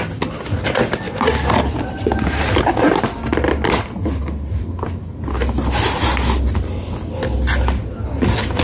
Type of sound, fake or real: real